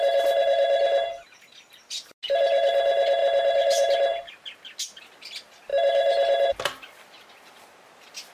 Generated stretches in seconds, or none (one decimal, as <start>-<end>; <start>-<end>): none